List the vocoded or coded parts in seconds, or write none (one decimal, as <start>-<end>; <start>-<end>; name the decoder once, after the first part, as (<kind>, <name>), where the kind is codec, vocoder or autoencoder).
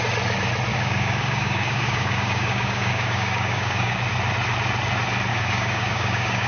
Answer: 0.7-4.0 (codec, DAC); 5.3-6.5